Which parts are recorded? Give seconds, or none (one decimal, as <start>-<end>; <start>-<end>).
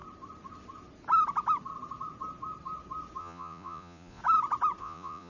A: 0.0-3.2; 4.2-4.8